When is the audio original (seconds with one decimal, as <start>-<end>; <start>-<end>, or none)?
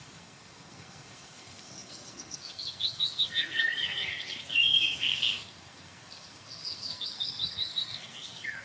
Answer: none